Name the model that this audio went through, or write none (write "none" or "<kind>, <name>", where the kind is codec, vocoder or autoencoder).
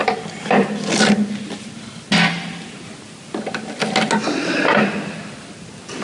none